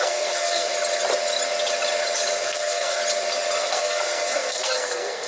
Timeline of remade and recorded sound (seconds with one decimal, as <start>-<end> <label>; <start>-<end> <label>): 0.0-0.7 remade; 0.7-2.4 recorded; 2.4-3.0 remade; 3.0-3.6 recorded; 3.6-5.3 remade